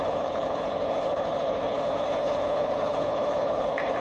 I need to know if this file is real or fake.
fake